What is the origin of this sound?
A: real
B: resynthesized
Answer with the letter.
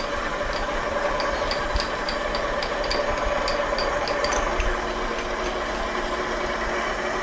A